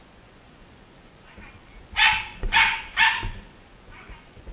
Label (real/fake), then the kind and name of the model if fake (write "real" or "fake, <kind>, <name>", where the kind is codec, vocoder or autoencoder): fake, vocoder, Vocos